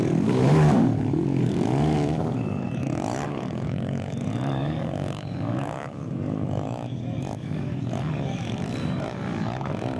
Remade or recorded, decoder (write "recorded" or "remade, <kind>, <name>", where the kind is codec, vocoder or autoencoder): remade, codec, DAC